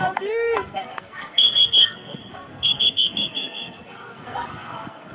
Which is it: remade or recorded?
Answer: remade